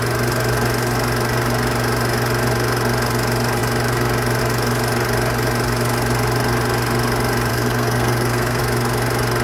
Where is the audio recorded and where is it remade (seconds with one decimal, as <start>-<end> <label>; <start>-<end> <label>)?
0.0-7.5 recorded; 7.5-8.6 remade; 8.6-9.4 recorded